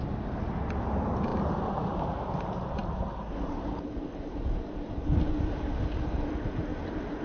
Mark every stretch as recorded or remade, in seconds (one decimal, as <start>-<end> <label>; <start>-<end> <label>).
0.0-2.8 recorded; 2.8-7.2 remade